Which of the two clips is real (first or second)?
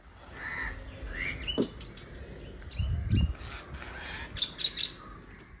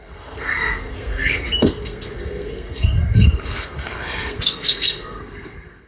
first